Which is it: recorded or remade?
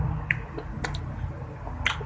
recorded